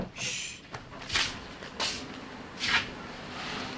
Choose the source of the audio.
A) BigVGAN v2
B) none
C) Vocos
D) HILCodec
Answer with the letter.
B